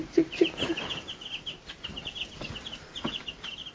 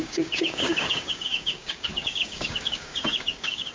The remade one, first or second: second